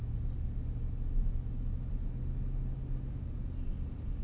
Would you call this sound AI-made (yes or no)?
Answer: no